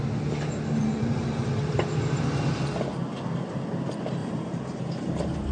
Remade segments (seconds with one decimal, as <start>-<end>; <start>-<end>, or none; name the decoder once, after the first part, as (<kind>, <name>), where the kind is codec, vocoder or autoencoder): 0.8-1.6 (vocoder, BigVGAN v2); 4.2-4.8